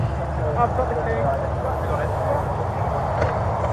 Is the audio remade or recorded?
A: recorded